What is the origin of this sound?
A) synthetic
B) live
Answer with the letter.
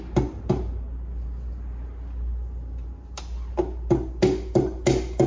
B